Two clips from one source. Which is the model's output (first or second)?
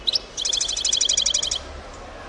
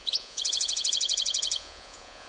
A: second